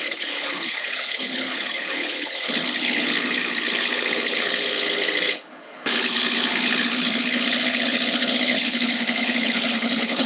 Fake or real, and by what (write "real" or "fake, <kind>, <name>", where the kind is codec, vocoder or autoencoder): fake, codec, HILCodec